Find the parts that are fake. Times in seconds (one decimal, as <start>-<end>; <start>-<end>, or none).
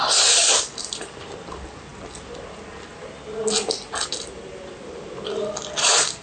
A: none